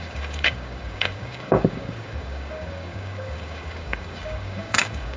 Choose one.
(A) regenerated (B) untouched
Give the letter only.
A